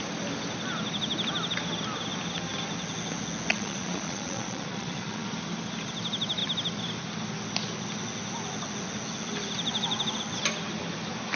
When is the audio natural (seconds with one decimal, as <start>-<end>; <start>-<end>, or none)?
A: 0.0-3.5; 5.3-11.4